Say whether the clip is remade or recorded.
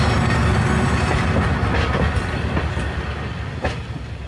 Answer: recorded